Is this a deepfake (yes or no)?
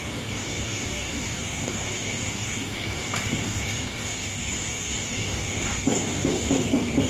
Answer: yes